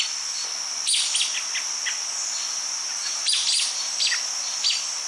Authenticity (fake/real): real